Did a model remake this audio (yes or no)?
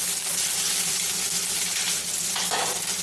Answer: no